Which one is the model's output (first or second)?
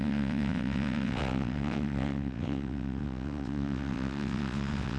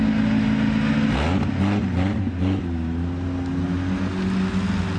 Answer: first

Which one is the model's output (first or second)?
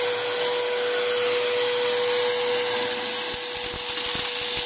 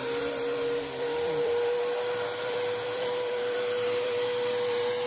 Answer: second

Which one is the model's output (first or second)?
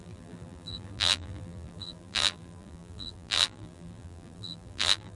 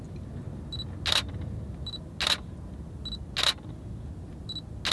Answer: first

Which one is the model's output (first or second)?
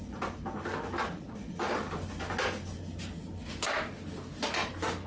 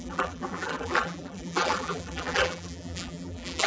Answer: second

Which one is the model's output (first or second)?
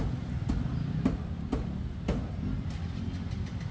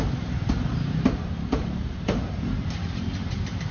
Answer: second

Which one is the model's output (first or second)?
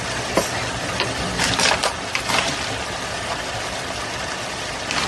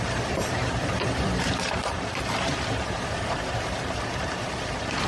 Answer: second